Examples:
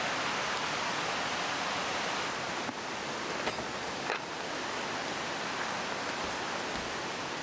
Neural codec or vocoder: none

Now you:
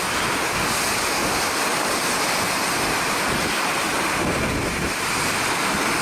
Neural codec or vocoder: none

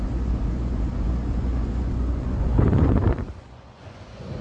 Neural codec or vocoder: vocoder, Vocos